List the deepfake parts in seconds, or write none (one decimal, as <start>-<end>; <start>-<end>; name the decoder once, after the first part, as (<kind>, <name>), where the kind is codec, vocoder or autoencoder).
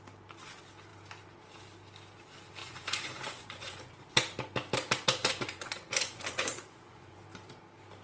2.6-4.0 (vocoder, Vocos); 5.2-7.2